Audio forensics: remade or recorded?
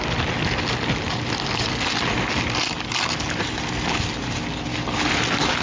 recorded